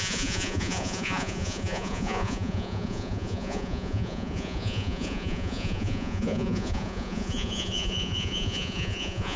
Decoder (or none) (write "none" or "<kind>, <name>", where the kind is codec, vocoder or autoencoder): vocoder, Vocos